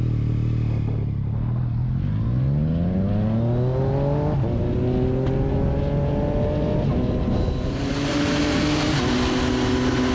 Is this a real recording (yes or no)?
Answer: yes